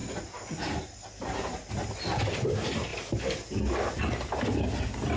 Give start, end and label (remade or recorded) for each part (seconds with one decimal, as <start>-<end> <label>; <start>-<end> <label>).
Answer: 0.0-5.2 recorded